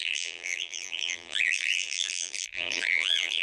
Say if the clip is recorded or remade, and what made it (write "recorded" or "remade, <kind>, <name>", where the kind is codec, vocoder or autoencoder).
remade, vocoder, BigVGAN v2